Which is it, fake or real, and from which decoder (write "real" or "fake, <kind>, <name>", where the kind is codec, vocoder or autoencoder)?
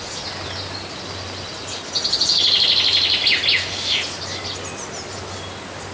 real